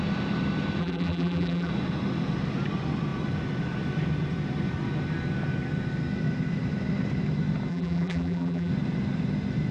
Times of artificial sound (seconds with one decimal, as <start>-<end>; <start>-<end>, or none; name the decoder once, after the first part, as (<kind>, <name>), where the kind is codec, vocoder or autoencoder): 0.8-1.7 (vocoder, BigVGAN v2); 7.7-8.7